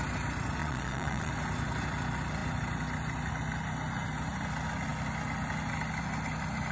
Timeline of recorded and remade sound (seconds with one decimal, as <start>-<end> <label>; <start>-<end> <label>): 0.0-0.6 recorded; 0.6-1.3 remade; 1.3-6.7 recorded